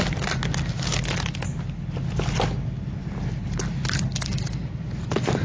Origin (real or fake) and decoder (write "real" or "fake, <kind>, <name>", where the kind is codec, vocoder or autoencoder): real